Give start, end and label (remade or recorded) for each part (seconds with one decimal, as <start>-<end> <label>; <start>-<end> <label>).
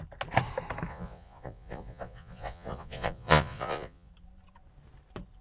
0.0-0.9 recorded; 0.9-4.1 remade; 4.1-5.4 recorded